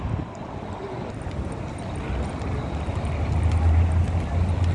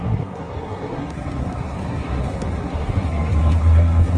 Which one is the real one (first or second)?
first